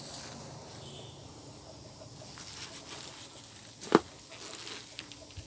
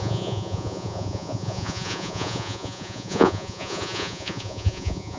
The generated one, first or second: second